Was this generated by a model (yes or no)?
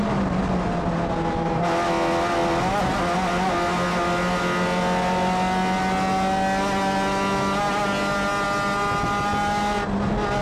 no